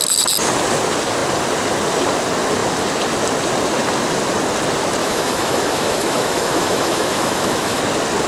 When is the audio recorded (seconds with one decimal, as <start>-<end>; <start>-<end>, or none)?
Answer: 0.0-5.0; 7.8-8.3